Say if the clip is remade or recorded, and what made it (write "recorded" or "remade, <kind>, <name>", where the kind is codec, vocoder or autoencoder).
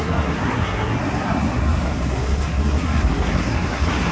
remade, codec, SNAC